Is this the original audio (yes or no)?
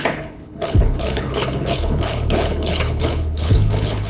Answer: no